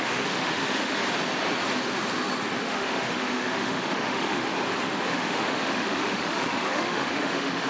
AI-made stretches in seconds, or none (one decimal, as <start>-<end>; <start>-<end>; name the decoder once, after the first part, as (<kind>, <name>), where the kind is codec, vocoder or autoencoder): 0.0-1.0 (autoencoder, DAC-VAE); 2.6-4.5; 5.1-7.7